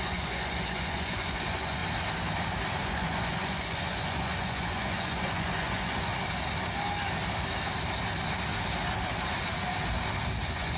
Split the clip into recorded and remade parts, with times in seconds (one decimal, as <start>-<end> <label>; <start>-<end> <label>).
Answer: 0.0-1.8 remade; 1.8-2.8 recorded; 2.8-6.1 remade; 6.1-10.4 recorded; 10.4-10.8 remade